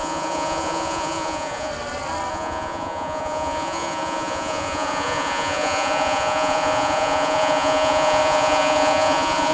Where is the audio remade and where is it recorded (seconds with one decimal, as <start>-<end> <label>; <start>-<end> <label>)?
0.0-1.7 remade; 1.7-2.3 recorded; 2.3-9.5 remade